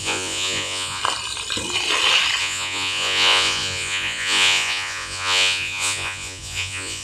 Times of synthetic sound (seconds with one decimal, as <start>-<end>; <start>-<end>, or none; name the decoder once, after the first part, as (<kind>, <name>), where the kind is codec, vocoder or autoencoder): 0.0-1.0 (vocoder, Vocos); 2.4-7.0